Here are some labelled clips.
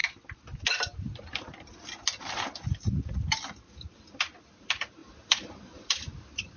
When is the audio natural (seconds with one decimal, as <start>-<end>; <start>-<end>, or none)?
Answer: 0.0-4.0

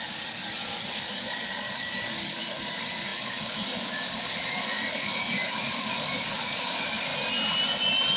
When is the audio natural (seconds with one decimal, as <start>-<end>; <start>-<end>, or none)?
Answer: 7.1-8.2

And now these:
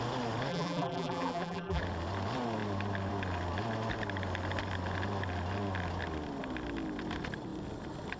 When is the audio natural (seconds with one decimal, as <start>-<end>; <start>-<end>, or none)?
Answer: 0.0-0.5; 1.8-8.2

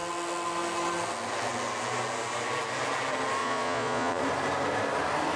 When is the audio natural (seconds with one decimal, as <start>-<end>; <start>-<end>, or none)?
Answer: 0.0-3.4; 4.2-5.4

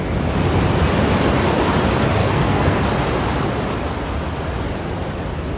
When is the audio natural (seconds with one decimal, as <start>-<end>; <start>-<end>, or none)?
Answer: 0.0-2.2; 2.8-5.6

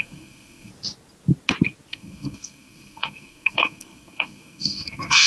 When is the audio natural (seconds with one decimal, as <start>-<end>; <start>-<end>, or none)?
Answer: 0.7-1.9

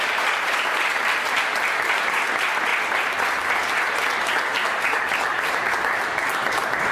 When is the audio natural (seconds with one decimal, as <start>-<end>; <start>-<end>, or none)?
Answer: 0.0-6.9

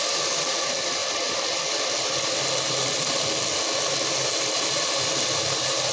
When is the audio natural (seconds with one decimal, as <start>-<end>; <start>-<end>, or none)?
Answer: 0.0-5.9